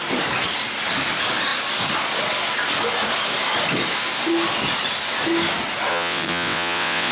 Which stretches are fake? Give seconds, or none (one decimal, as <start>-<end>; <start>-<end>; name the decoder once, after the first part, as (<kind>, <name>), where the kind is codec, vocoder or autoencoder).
5.9-7.1 (vocoder, WaveNeXt)